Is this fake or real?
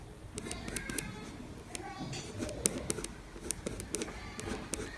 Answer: real